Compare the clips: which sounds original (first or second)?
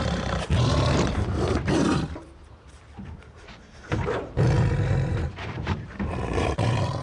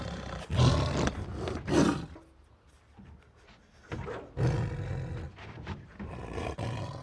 second